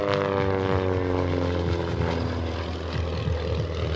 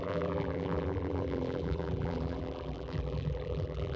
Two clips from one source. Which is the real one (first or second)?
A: first